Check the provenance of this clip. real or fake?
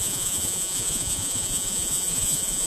fake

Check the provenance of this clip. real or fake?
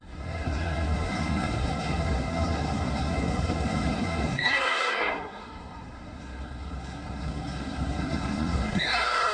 fake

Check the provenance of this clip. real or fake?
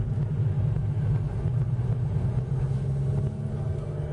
real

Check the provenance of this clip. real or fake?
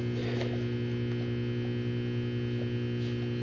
real